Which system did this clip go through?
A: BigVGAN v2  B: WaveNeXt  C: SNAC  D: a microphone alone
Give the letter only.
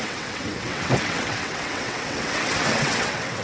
B